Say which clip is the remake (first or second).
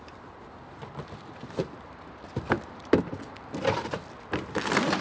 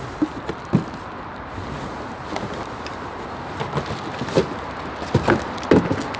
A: first